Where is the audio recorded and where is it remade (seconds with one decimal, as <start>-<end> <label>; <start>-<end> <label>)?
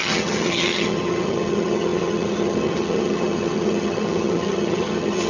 0.0-5.3 remade